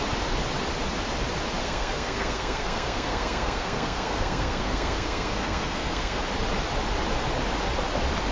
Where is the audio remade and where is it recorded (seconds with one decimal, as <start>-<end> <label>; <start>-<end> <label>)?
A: 0.0-1.6 recorded; 1.6-6.2 remade; 6.2-8.3 recorded